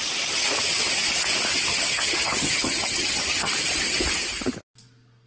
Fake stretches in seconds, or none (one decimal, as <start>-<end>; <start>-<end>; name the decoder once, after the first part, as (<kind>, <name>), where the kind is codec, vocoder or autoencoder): 1.7-3.5 (vocoder, HiFi-GAN)